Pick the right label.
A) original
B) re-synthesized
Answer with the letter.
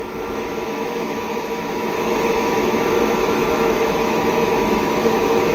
B